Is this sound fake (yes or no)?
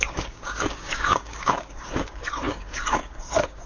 yes